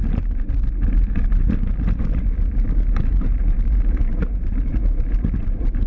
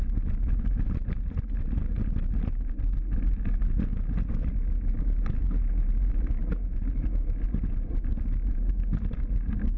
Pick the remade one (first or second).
first